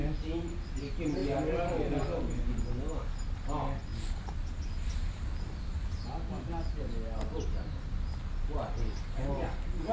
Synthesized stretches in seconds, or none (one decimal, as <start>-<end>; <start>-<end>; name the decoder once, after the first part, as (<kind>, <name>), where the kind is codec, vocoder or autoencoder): none